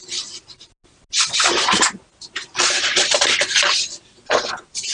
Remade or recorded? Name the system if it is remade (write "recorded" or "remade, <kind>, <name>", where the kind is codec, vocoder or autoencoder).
recorded